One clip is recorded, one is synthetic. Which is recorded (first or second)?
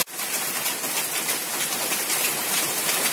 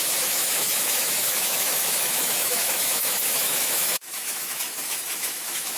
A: first